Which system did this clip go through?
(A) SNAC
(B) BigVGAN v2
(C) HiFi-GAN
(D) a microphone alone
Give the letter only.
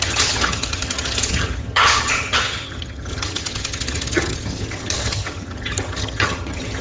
C